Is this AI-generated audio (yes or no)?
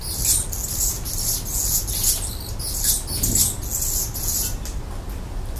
no